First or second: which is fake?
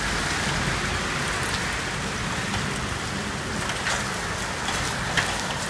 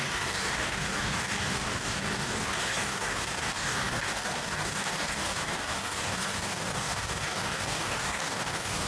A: second